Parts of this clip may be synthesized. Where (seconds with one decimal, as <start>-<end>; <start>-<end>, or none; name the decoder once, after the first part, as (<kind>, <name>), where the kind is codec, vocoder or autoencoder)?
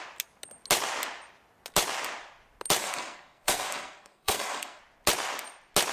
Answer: 2.8-4.8 (codec, SNAC)